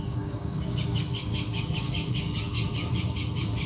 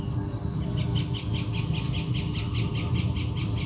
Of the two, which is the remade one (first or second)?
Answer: first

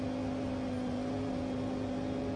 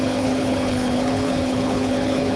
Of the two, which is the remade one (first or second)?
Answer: second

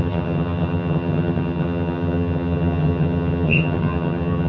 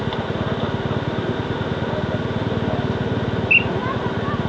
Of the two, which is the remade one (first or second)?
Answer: first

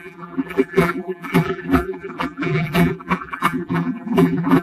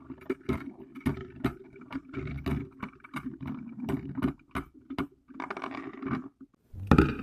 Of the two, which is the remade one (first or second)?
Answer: first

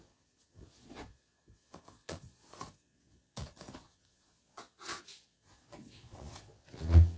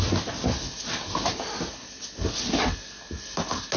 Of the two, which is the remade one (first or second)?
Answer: first